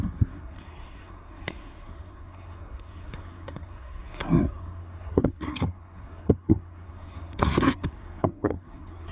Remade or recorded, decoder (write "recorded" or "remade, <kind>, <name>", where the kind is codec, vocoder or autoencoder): remade, codec, SNAC